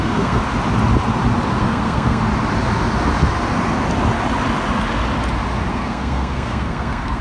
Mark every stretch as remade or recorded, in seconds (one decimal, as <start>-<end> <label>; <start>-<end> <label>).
0.0-0.4 remade; 0.4-1.6 recorded; 1.6-2.2 remade; 2.2-5.7 recorded; 5.7-7.2 remade